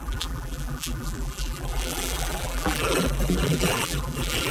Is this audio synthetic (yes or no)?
yes